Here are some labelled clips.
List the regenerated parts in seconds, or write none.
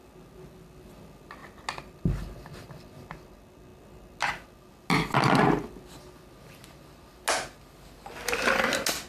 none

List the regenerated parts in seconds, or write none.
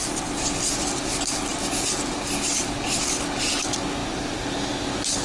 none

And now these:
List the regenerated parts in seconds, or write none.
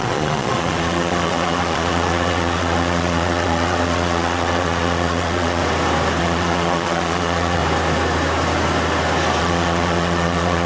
0.0-5.6; 6.2-7.6; 9.4-10.7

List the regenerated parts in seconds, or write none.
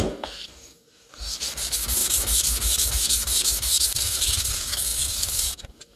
0.0-6.0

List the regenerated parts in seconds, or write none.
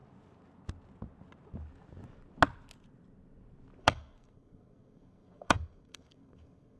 3.8-6.8